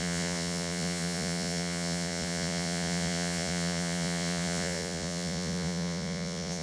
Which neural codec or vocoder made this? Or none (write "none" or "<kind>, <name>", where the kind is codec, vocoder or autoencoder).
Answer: vocoder, Vocos